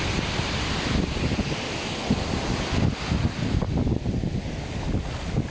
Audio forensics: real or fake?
real